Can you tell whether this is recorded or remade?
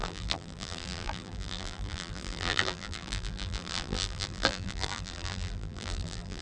remade